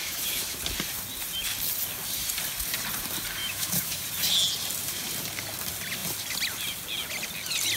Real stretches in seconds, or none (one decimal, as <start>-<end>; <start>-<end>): 0.6-3.4; 4.0-7.8